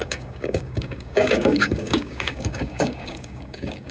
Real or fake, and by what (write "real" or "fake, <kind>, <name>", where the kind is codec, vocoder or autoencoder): fake, codec, DAC